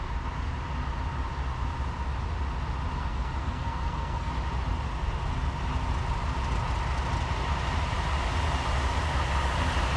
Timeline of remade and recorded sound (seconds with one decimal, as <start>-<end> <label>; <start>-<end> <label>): 0.0-3.0 recorded; 3.0-4.3 remade; 4.3-10.0 recorded